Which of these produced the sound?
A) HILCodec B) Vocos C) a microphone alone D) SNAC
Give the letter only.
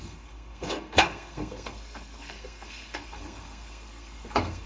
D